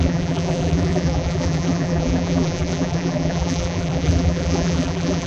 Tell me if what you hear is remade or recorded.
remade